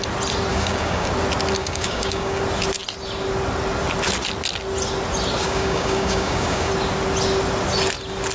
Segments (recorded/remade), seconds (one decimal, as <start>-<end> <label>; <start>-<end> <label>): 0.0-0.5 recorded; 0.5-1.1 remade; 1.1-1.6 recorded; 1.6-2.4 remade; 2.4-5.4 recorded; 5.4-6.7 remade; 6.7-8.3 recorded